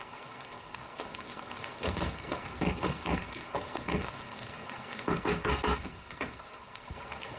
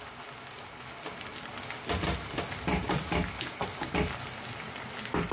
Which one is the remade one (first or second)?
first